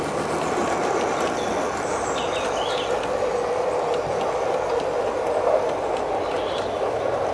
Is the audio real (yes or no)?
yes